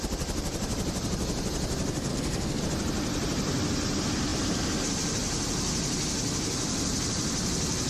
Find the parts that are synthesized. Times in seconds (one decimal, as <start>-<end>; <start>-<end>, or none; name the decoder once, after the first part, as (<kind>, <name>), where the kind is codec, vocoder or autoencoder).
2.1-2.6 (codec, SNAC)